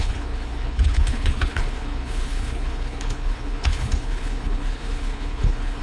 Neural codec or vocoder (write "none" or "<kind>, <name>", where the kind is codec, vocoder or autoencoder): codec, HILCodec